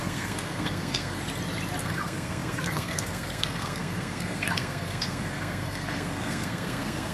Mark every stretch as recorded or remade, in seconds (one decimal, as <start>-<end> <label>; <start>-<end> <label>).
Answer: 0.0-1.2 remade; 1.2-1.8 recorded; 1.8-7.1 remade

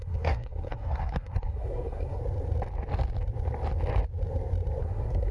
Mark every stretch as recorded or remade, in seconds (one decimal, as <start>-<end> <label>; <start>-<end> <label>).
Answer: 0.0-2.2 remade; 2.2-4.8 recorded; 4.8-5.3 remade

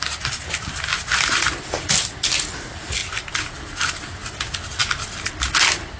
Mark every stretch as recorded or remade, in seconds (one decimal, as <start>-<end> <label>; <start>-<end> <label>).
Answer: 0.0-6.0 recorded

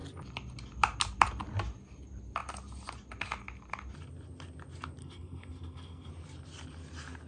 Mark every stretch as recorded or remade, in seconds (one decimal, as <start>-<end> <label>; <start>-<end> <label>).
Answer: 0.0-5.0 recorded; 5.0-6.1 remade; 6.1-7.3 recorded

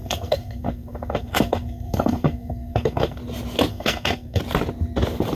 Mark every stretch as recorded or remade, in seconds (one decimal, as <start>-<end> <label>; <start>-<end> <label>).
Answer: 0.0-3.2 remade; 3.2-3.7 recorded; 3.7-4.4 remade; 4.4-5.4 recorded